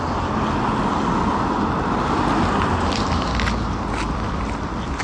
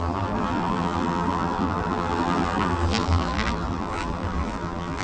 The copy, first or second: second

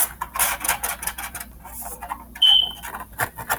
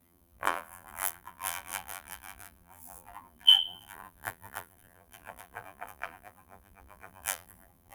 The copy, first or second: second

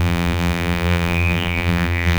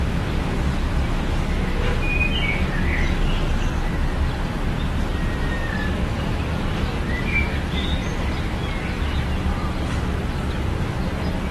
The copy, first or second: first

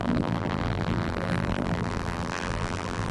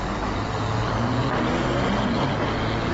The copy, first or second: first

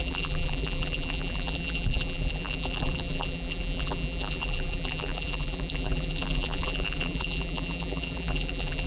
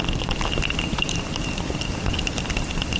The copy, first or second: first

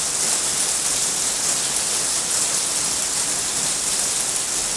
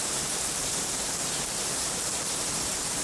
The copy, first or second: second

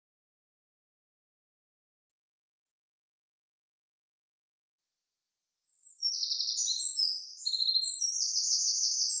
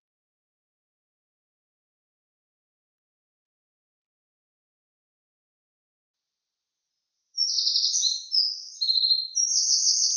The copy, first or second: first